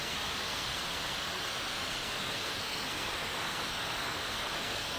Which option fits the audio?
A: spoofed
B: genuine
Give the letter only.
A